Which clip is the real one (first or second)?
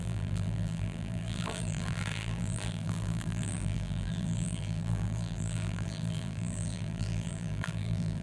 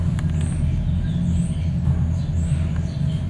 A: second